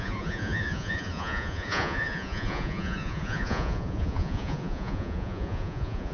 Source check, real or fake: fake